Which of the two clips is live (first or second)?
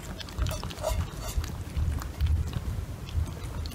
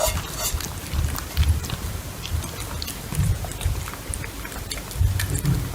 second